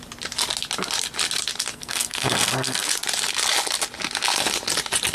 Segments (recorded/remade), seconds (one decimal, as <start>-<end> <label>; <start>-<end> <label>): 0.0-1.7 recorded; 1.7-2.9 remade; 2.9-5.1 recorded